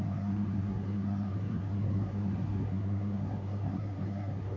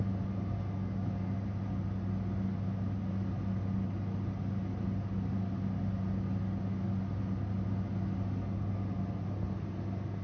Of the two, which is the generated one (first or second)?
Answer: first